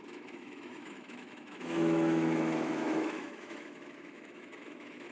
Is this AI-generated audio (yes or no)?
yes